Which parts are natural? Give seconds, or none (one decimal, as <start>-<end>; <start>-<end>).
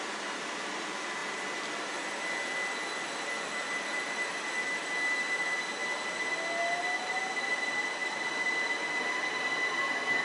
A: 0.0-10.2